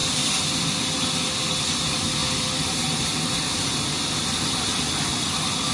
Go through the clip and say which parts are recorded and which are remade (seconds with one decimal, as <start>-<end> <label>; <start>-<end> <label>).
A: 0.0-5.7 recorded